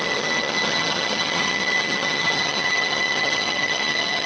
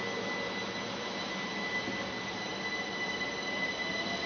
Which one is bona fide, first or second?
second